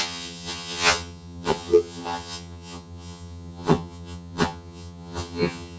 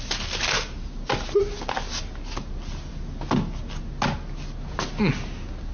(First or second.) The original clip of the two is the second